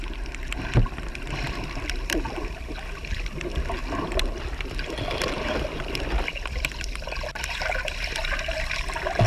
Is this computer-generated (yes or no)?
no